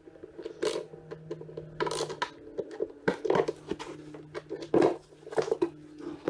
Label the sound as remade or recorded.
recorded